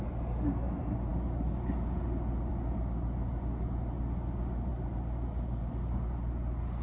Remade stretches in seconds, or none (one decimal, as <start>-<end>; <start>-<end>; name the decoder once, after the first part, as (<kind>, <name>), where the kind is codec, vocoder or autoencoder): none